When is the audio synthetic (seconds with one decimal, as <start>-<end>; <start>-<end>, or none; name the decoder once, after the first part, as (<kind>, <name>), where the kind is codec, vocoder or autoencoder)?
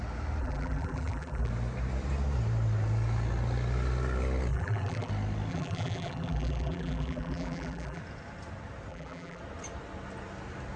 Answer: 0.4-1.5 (vocoder, BigVGAN v2); 4.5-5.1; 5.5-8.0; 8.9-9.4